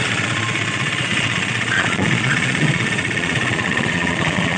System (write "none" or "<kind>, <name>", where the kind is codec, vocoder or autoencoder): vocoder, Vocos